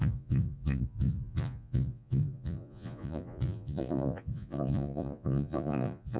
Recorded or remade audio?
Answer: remade